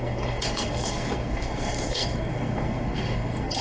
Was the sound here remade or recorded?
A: remade